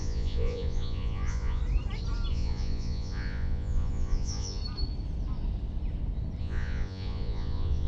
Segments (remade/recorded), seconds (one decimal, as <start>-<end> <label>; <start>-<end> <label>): 0.0-1.6 remade; 1.6-2.3 recorded; 2.3-4.6 remade; 4.6-6.4 recorded; 6.4-7.9 remade